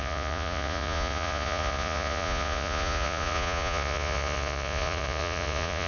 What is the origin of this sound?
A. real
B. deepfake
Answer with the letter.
B